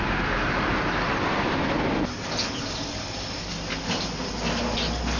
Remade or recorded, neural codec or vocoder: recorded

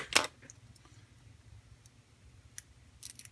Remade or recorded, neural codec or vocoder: recorded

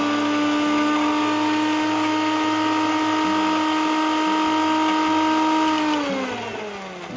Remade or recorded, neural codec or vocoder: recorded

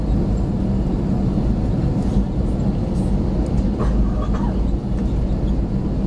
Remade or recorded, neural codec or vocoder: recorded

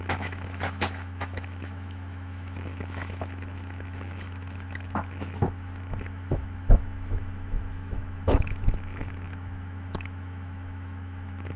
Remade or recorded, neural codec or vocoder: remade, autoencoder, DAC-VAE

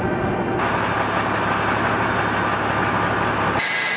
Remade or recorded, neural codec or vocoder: recorded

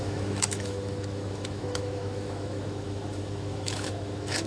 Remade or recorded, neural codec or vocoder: remade, autoencoder, DAC-VAE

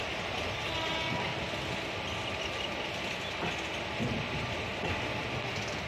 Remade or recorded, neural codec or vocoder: recorded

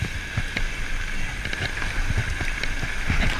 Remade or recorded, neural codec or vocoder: recorded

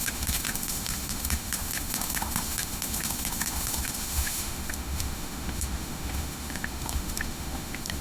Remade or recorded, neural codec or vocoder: remade, autoencoder, DAC-VAE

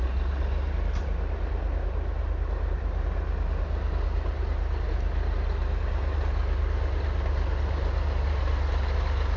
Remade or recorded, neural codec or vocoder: recorded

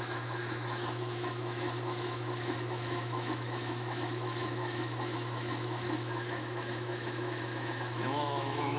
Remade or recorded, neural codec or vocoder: remade, autoencoder, DAC-VAE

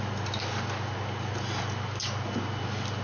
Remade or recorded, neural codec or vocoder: recorded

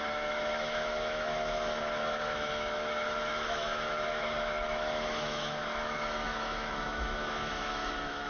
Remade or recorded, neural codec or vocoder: remade, autoencoder, DAC-VAE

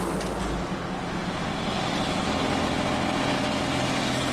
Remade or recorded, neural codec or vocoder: recorded